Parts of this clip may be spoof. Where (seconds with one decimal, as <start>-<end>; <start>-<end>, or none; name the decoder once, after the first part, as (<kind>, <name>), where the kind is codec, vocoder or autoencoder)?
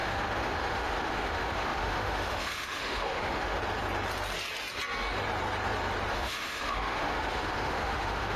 0.0-3.6 (autoencoder, DAC-VAE); 6.1-8.4